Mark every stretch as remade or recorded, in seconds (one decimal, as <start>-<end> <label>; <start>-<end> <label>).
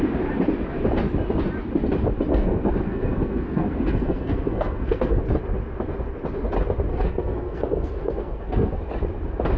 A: 0.0-2.3 recorded; 2.3-5.2 remade; 5.2-6.9 recorded; 6.9-8.8 remade; 8.8-9.6 recorded